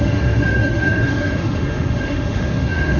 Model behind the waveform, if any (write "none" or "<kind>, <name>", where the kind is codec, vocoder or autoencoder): autoencoder, DAC-VAE